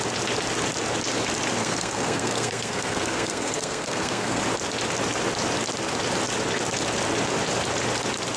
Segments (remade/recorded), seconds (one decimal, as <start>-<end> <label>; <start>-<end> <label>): 0.0-1.6 recorded; 1.6-4.4 remade; 4.4-8.4 recorded